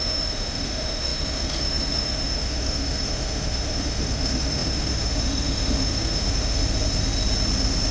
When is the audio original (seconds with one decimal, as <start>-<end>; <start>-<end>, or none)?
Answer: 6.6-7.9